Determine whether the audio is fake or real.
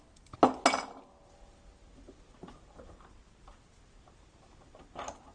real